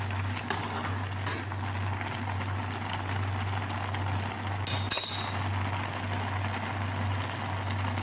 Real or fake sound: real